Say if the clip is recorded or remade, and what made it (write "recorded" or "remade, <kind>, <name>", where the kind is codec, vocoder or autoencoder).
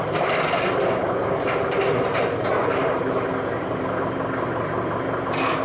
recorded